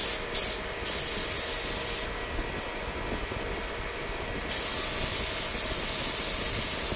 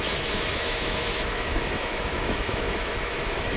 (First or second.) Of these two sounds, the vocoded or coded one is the second